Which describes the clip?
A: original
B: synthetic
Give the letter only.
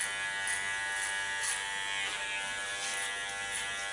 A